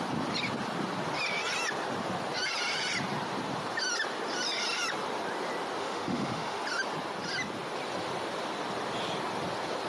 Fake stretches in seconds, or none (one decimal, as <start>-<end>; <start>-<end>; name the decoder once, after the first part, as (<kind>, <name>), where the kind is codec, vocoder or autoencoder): 5.8-6.6 (autoencoder, DAC-VAE)